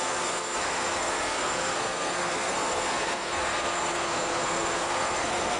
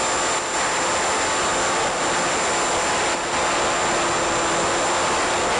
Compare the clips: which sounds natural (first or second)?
second